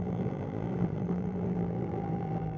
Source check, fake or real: fake